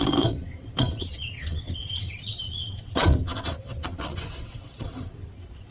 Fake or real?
fake